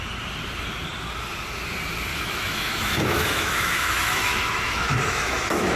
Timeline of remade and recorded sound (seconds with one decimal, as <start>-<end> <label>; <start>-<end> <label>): 0.0-2.1 recorded; 2.1-5.8 remade